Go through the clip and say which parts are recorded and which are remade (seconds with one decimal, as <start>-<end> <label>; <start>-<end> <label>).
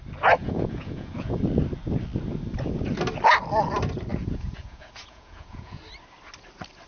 0.0-0.4 recorded; 0.4-1.4 remade; 1.4-4.1 recorded; 4.1-5.8 remade; 5.8-6.9 recorded